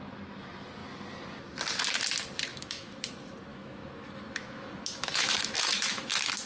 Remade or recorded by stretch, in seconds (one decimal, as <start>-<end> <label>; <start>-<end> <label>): 0.0-2.5 recorded; 2.5-3.1 remade; 3.1-3.5 recorded; 3.5-6.1 remade; 6.1-6.5 recorded